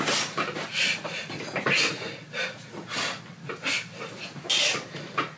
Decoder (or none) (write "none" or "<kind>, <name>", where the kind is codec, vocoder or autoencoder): none